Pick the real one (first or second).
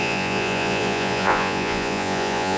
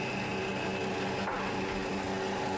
second